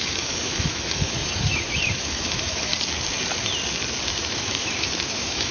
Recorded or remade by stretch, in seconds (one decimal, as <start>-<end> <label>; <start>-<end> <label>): 0.0-2.7 remade; 2.7-4.0 recorded; 4.0-5.5 remade